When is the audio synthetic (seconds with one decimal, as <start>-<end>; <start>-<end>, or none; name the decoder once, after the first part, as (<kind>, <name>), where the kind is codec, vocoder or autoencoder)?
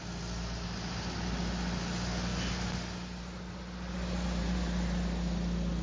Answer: none